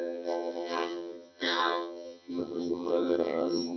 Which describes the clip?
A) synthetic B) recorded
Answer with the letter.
A